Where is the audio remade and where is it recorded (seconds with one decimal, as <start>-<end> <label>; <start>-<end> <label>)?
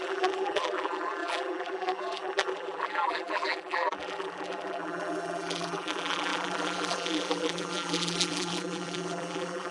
0.0-9.7 remade